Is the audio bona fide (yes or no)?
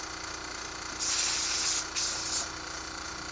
yes